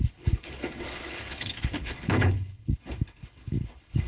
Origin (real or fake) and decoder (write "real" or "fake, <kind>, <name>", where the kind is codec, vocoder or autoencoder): fake, codec, HILCodec